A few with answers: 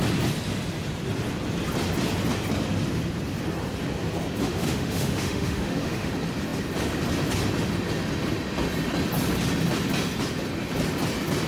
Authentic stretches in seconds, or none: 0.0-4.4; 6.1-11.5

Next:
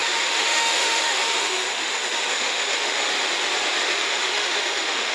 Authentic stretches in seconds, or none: 3.1-3.9

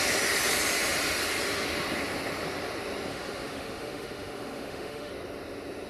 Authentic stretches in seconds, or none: 0.0-3.1; 5.1-5.9

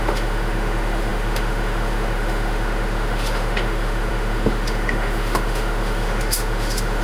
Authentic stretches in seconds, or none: none